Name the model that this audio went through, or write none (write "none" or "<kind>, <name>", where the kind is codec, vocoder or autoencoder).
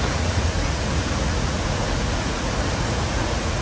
vocoder, Vocos